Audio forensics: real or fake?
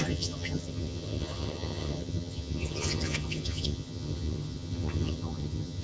fake